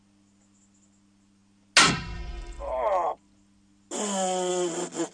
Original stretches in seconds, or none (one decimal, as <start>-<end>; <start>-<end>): 0.0-5.1